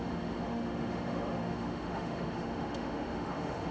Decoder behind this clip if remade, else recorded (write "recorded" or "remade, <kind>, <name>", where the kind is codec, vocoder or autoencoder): remade, autoencoder, DAC-VAE